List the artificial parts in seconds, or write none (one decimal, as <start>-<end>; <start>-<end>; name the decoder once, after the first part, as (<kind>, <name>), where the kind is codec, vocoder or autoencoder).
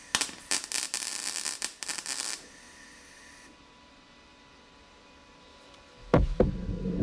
none